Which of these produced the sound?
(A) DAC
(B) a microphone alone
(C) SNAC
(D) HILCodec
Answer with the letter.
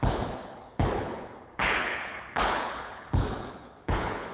D